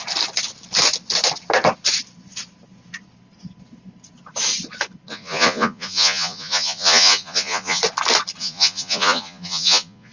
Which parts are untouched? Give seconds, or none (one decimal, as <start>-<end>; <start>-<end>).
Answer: 0.0-5.1; 7.8-8.4